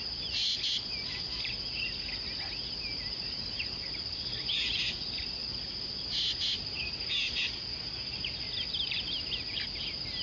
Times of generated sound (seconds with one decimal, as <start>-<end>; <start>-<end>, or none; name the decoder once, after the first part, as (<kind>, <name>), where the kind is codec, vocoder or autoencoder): none